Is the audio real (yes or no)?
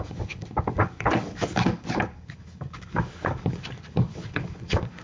no